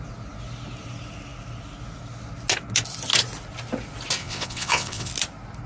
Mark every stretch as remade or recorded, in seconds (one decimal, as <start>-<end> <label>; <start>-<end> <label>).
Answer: 0.0-4.2 recorded; 4.2-5.1 remade; 5.1-5.7 recorded